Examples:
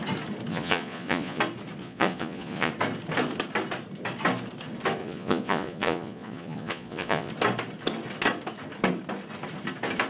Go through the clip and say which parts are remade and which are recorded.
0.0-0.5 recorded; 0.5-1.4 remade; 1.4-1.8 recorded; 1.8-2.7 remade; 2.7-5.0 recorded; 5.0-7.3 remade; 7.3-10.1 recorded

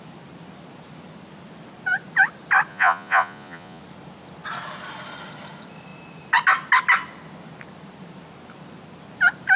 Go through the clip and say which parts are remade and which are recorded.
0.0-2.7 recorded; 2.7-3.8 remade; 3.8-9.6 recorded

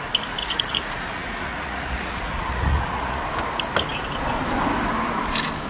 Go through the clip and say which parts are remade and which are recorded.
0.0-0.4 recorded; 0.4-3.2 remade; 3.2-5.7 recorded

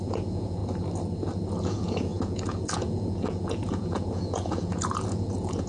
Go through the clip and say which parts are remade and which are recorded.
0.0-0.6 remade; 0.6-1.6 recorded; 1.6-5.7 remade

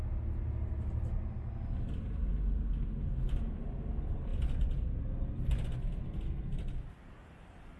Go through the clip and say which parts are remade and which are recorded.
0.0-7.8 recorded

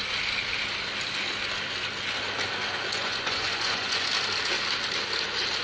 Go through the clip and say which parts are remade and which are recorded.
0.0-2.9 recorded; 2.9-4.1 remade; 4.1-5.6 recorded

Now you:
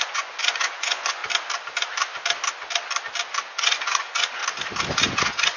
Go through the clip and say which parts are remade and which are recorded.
0.0-1.2 remade; 1.2-3.5 recorded; 3.5-4.4 remade; 4.4-5.0 recorded; 5.0-5.6 remade

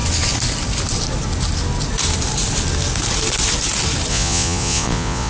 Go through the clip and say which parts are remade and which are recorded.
0.0-4.1 recorded; 4.1-5.3 remade